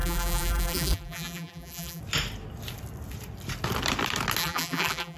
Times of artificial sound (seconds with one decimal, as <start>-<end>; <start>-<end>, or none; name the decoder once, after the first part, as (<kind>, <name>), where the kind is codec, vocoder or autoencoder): 0.0-2.0 (vocoder, BigVGAN v2); 4.4-5.2